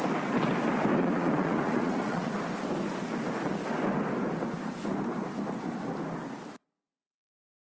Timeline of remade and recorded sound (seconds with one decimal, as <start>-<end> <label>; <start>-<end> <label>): 0.0-0.9 recorded; 0.9-2.3 remade; 2.3-7.6 recorded